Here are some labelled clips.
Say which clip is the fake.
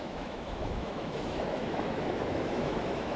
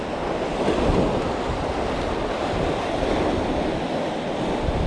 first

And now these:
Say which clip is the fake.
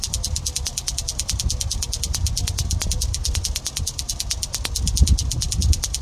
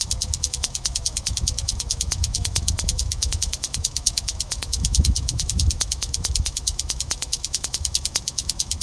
second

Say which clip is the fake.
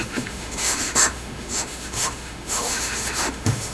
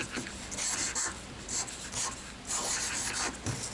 first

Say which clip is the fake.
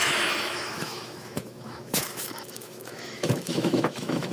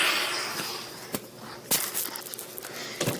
first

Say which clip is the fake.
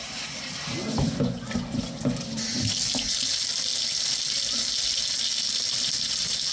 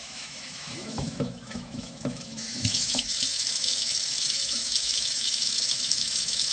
second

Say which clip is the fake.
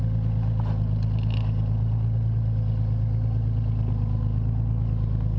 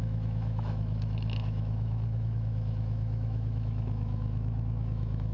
second